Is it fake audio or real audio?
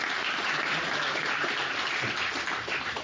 real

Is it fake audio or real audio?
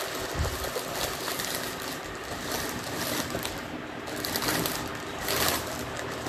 real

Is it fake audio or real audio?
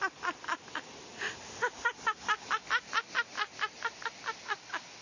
real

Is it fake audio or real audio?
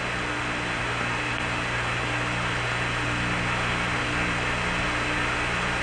real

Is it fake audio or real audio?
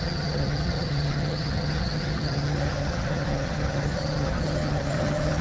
fake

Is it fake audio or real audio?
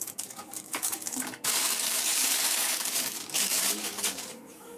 fake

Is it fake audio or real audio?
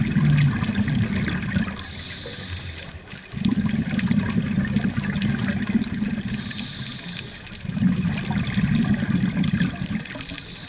real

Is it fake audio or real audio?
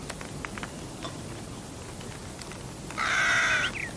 real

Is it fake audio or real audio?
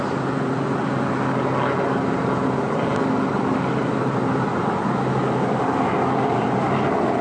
real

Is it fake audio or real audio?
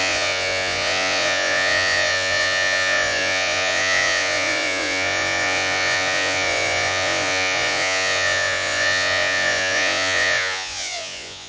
fake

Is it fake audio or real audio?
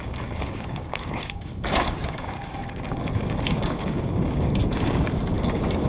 fake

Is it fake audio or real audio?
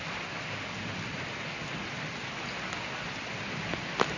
real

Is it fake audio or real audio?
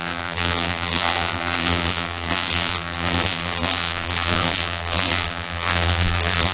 fake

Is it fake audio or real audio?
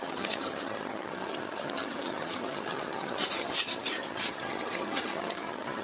fake